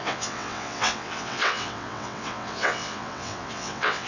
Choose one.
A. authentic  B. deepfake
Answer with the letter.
B